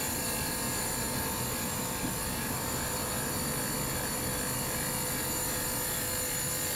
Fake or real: real